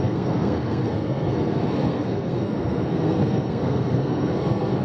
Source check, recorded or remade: remade